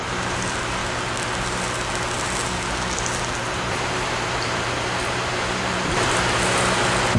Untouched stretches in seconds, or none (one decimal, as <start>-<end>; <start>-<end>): 0.8-3.2; 6.4-7.2